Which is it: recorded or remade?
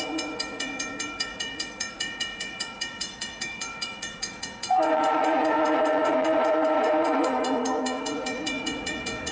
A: remade